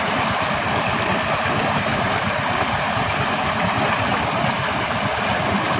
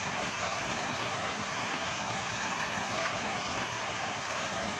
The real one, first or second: first